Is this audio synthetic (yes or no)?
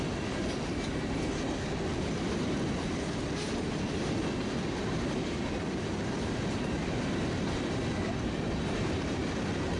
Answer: no